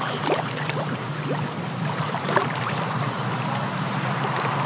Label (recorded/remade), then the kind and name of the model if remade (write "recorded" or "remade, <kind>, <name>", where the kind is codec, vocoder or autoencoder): remade, vocoder, BigVGAN v2